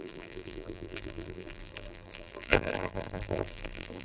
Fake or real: fake